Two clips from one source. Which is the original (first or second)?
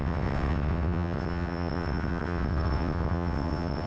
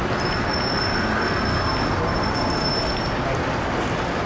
second